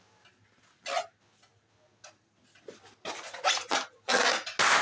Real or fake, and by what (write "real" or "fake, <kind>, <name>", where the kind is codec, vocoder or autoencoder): real